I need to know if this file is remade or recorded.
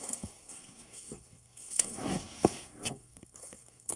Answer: remade